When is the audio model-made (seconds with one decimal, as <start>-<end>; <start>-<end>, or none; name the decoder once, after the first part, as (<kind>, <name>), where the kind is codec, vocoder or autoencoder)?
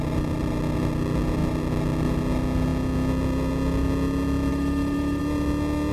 4.5-5.2 (autoencoder, DAC-VAE)